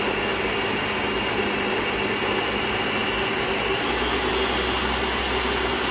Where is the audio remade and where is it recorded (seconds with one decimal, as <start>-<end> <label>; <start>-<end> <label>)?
0.0-5.9 recorded